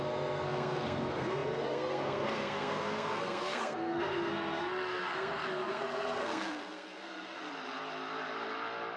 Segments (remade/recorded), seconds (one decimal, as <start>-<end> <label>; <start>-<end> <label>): 0.0-7.4 remade; 7.4-9.0 recorded